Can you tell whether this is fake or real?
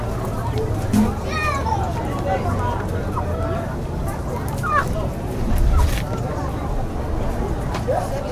real